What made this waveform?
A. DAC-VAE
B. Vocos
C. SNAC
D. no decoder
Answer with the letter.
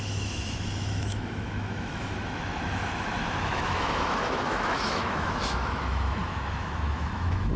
A